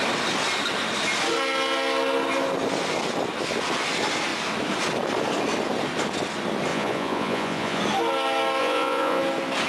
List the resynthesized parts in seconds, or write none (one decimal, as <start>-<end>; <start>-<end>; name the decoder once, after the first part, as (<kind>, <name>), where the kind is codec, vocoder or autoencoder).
6.7-7.8 (vocoder, Vocos); 8.6-9.2